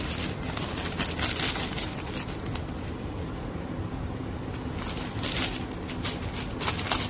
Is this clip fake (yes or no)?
no